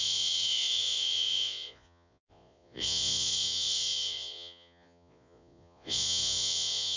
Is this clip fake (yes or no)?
yes